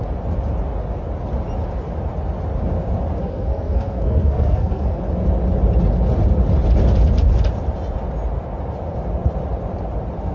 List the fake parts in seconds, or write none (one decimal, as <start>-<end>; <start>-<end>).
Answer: 3.2-5.0